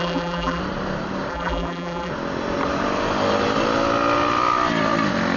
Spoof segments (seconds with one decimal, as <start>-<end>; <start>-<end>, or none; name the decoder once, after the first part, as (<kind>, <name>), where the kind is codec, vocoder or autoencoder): 0.0-0.6 (vocoder, BigVGAN v2); 1.3-2.1